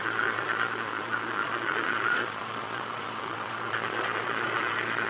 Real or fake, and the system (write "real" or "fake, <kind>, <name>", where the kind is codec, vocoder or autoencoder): fake, vocoder, Vocos